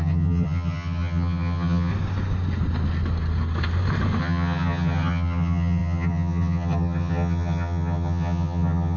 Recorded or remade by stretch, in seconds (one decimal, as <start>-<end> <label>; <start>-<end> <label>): 0.0-1.9 remade; 1.9-4.2 recorded; 4.2-9.0 remade